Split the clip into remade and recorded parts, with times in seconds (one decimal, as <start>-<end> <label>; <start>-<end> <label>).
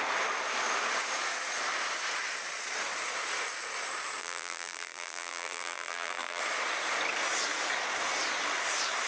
0.0-4.2 recorded; 4.2-6.4 remade; 6.4-9.1 recorded